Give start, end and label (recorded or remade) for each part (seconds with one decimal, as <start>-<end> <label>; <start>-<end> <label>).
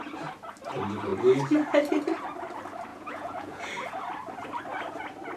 0.0-2.9 recorded; 2.9-3.6 remade; 3.6-5.4 recorded